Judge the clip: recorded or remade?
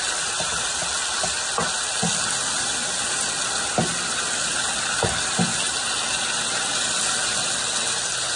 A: recorded